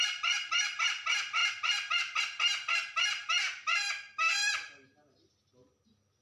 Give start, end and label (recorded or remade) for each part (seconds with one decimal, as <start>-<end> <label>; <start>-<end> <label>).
0.0-6.2 recorded